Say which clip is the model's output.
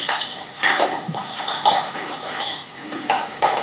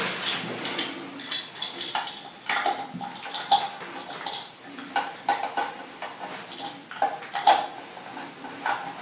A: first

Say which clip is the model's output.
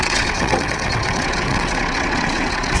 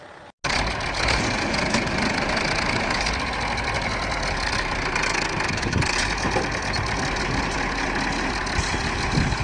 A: first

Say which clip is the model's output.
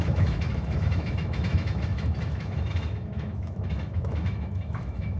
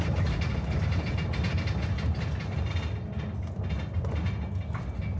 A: first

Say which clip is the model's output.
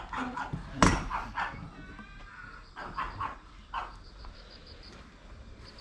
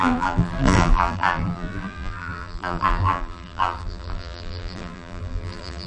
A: second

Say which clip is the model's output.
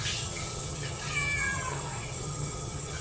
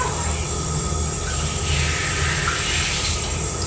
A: first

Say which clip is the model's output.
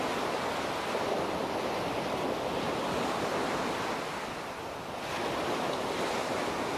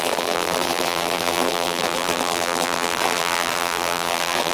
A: second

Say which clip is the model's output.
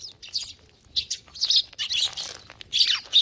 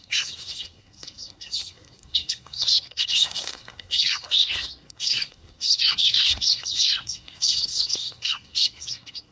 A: second